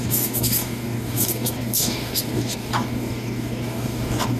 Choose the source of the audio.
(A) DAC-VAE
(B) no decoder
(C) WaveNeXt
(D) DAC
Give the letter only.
D